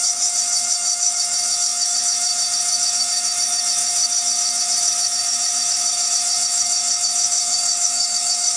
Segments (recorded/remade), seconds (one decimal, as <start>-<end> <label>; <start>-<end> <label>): 0.0-8.6 remade